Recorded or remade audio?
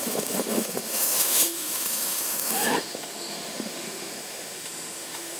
remade